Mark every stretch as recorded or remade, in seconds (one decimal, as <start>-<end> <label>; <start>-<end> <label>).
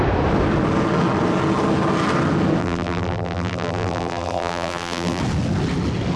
0.0-2.6 recorded; 2.6-5.2 remade; 5.2-6.2 recorded